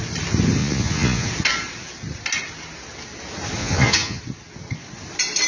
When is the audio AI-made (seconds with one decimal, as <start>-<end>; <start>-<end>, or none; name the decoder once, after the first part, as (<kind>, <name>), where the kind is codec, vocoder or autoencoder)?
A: 0.6-1.3 (vocoder, Vocos); 3.6-4.2